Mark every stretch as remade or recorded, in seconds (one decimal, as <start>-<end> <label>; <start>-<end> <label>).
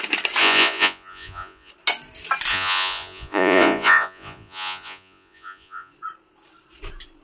0.0-0.4 recorded; 0.4-1.7 remade; 1.7-2.5 recorded; 2.5-5.9 remade; 5.9-7.2 recorded